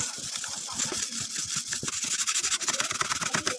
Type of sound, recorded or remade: recorded